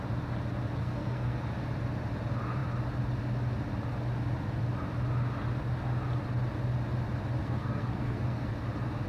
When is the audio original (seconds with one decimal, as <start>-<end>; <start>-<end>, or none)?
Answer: 0.0-0.8; 1.4-7.4; 8.5-9.1